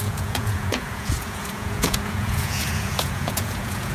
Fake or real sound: fake